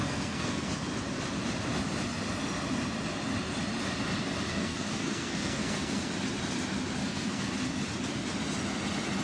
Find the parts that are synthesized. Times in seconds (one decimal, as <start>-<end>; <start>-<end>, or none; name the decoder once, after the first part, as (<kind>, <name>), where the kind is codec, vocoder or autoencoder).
0.0-0.7 (codec, SNAC); 4.5-6.1; 7.0-7.5